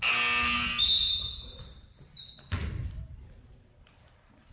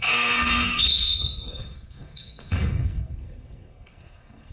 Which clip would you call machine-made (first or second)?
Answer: second